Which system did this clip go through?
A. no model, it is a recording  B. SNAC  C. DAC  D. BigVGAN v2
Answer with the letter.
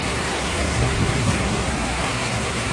B